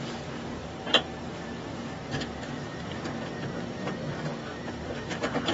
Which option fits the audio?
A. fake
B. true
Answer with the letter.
A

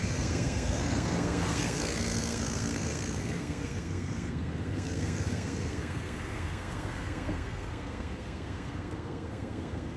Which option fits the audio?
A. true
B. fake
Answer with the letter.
B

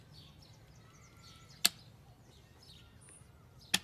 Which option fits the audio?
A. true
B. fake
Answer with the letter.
A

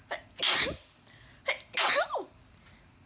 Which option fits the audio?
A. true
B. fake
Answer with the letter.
B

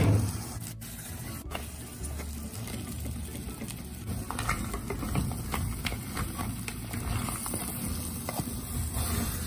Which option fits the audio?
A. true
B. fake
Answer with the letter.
A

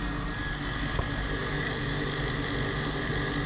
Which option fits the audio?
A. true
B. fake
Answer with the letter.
A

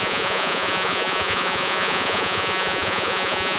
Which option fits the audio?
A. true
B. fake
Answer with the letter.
B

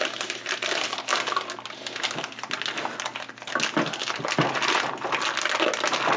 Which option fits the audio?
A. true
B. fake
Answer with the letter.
A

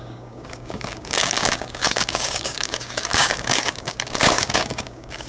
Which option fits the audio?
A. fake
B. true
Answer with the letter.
A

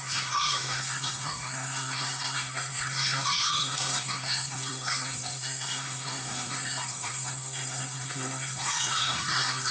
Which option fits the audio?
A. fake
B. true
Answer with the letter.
A